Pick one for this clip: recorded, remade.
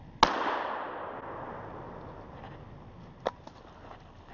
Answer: recorded